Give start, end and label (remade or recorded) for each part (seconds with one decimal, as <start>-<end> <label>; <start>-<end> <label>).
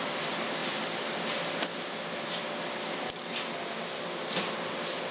0.0-5.1 recorded